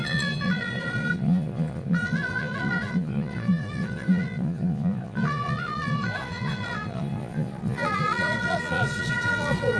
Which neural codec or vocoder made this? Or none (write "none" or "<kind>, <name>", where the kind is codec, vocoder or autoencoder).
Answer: vocoder, Vocos